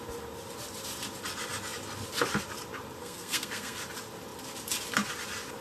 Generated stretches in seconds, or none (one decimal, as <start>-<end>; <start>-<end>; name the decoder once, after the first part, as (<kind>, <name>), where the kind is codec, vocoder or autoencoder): 3.0-3.8 (codec, SNAC)